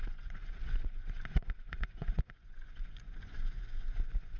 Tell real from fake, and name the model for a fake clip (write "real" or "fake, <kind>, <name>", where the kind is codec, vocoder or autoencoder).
fake, vocoder, Vocos